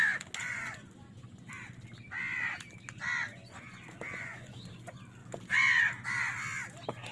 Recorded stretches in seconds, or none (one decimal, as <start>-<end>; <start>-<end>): 0.0-0.4; 1.5-3.3; 4.6-5.2; 5.8-7.1